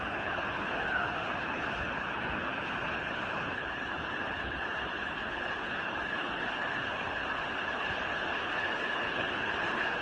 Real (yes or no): no